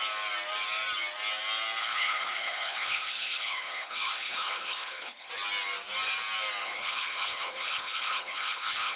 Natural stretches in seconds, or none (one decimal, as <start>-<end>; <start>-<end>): 0.0-1.8; 5.3-6.6